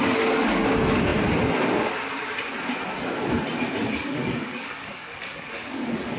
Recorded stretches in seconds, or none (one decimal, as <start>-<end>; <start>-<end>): 0.0-4.0